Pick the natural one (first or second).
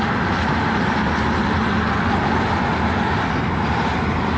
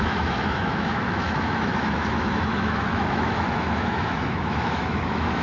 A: first